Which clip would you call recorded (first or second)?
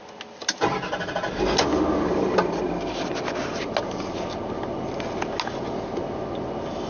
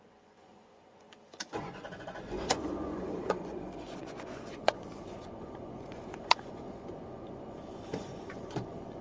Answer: first